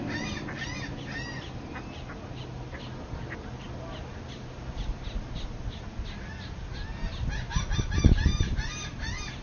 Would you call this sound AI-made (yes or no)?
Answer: no